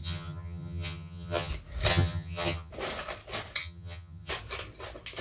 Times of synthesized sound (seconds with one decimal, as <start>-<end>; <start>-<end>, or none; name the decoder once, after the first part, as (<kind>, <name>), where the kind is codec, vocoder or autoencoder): 0.0-1.5 (vocoder, HiFi-GAN); 1.9-2.7; 3.6-4.3